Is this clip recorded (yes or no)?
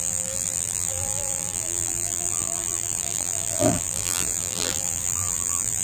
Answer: no